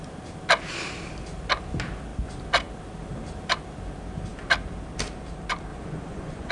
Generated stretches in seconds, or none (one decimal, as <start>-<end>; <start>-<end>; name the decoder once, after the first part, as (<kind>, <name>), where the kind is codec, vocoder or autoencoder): 5.7-6.5 (vocoder, Vocos)